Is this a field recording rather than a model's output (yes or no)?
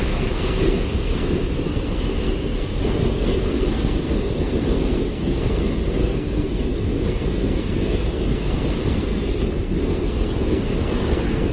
no